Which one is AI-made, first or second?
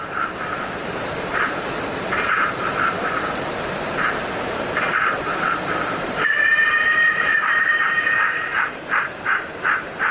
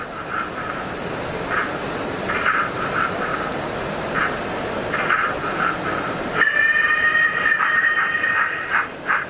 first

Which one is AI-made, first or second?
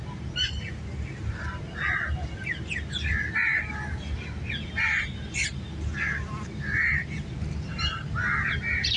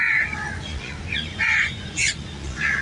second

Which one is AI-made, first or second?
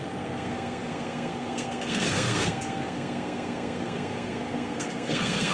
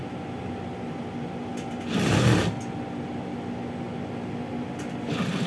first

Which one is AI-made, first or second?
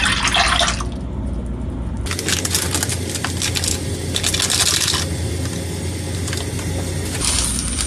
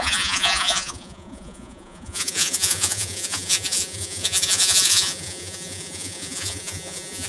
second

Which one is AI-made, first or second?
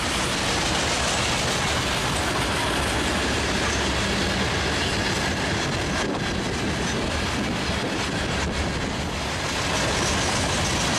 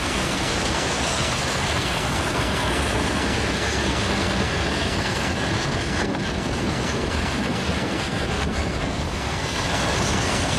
second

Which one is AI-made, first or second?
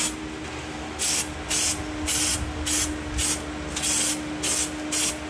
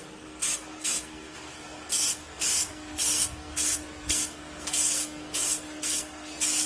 second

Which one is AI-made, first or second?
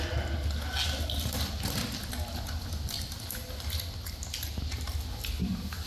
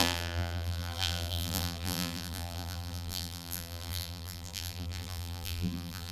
second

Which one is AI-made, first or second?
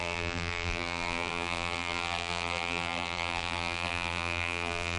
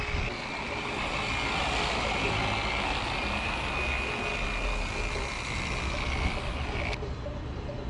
first